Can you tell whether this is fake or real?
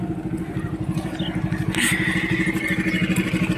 real